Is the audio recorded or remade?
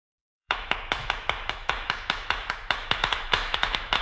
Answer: remade